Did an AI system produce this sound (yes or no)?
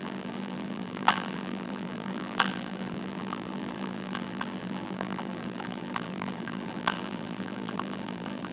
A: yes